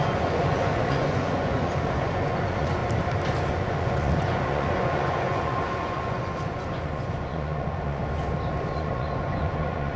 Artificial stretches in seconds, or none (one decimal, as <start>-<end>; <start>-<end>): 0.0-2.8; 3.5-8.0; 8.7-10.0